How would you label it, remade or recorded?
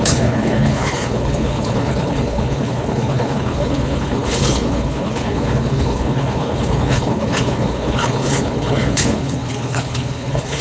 remade